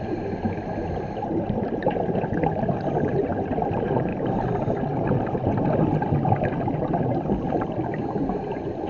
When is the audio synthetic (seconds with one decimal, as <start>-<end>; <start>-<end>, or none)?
none